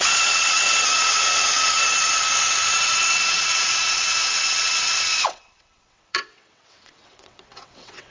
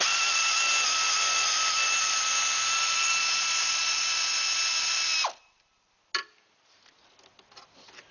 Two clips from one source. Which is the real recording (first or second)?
second